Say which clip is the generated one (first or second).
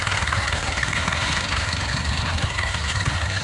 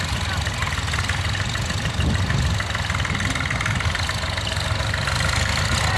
first